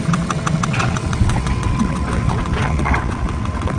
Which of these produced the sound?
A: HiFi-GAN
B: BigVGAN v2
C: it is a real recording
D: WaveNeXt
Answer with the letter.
D